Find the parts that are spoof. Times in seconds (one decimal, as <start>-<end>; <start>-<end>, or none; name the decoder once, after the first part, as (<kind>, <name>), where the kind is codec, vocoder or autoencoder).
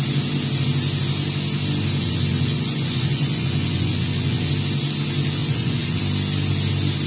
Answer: 2.0-4.5 (vocoder, Vocos); 5.4-6.0